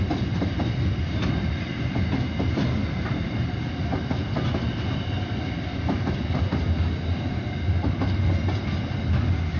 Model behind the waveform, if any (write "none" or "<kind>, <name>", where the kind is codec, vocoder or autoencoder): none